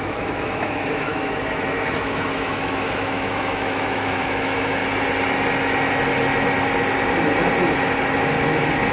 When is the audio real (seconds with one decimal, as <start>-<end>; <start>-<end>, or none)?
4.8-8.9